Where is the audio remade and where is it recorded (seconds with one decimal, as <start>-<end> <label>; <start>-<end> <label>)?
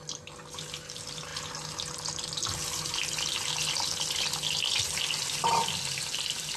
0.0-6.6 recorded